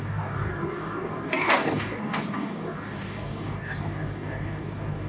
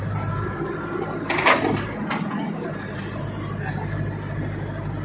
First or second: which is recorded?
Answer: second